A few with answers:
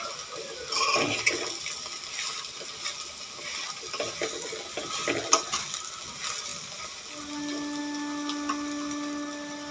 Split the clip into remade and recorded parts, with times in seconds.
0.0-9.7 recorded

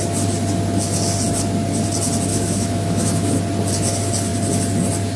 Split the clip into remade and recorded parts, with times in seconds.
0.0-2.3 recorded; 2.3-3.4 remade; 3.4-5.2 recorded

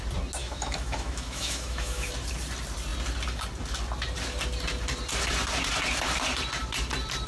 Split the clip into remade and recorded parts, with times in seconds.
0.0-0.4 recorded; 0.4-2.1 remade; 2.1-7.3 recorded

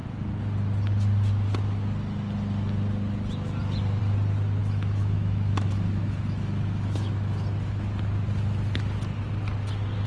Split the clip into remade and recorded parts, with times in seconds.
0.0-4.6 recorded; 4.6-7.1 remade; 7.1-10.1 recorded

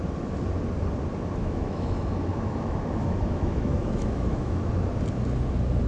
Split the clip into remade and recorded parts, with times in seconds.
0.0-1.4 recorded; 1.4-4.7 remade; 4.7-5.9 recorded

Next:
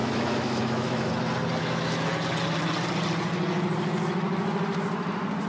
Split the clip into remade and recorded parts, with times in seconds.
0.0-1.1 remade; 1.1-1.6 recorded; 1.6-2.1 remade; 2.1-5.5 recorded

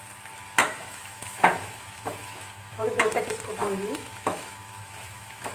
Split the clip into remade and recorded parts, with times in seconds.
0.0-0.6 recorded; 0.6-3.1 remade; 3.1-3.6 recorded; 3.6-5.5 remade

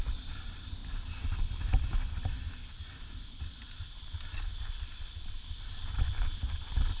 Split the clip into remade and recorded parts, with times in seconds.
0.0-7.0 recorded